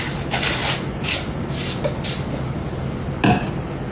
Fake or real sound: real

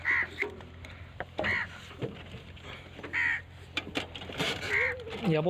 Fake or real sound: fake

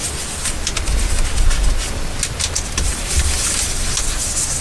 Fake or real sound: real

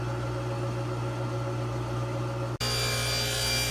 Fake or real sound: real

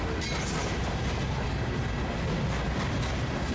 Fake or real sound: real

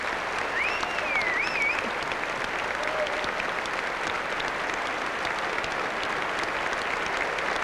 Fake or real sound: real